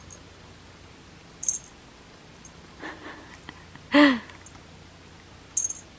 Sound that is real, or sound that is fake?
real